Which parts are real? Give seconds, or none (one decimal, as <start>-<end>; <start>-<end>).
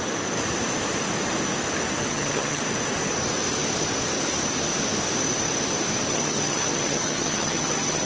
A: 0.0-2.1; 2.6-6.1